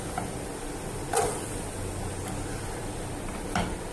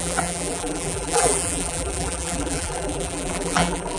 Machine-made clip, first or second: second